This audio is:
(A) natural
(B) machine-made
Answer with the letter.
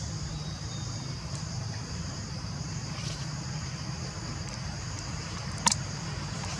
B